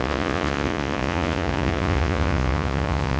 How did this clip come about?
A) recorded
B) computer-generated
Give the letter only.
B